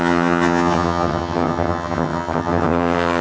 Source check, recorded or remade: remade